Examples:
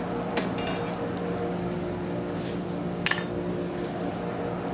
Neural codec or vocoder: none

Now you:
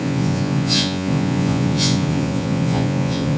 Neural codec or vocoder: vocoder, Vocos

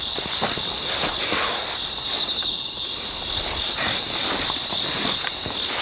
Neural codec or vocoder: none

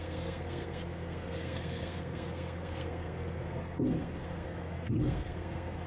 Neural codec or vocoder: codec, SNAC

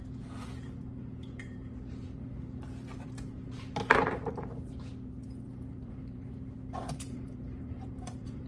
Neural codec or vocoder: vocoder, BigVGAN v2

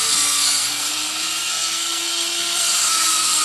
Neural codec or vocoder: codec, SNAC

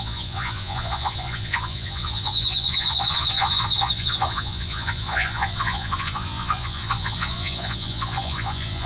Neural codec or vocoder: vocoder, Vocos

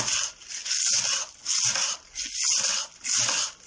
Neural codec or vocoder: none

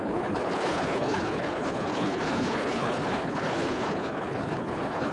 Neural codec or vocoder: codec, HILCodec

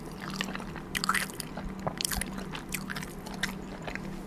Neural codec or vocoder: none